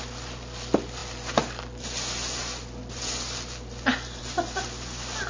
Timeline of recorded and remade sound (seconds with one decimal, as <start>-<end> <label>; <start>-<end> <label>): 0.0-5.3 recorded

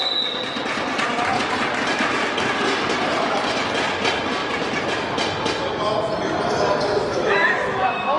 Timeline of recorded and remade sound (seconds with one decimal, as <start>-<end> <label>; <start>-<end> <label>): 0.0-7.1 recorded; 7.1-8.2 remade